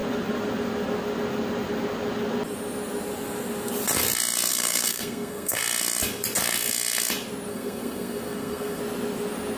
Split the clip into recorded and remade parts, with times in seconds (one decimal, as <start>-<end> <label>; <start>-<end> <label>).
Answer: 0.0-4.5 recorded; 4.5-5.6 remade; 5.6-7.5 recorded; 7.5-8.8 remade; 8.8-9.6 recorded